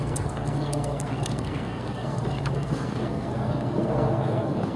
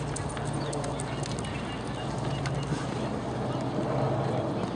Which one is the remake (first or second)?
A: first